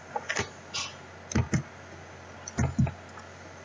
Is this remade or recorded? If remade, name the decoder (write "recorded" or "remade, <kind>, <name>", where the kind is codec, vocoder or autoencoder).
recorded